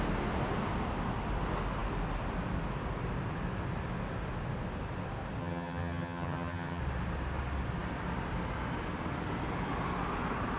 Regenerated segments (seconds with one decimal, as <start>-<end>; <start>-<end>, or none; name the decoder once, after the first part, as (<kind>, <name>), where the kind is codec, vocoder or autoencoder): 5.4-6.8 (vocoder, HiFi-GAN)